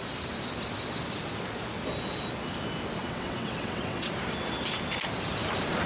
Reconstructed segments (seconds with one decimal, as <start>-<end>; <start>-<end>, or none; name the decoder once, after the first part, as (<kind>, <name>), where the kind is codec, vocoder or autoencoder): 3.0-4.1 (vocoder, WaveNeXt)